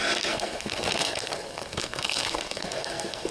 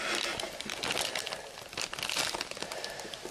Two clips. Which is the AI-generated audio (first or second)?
first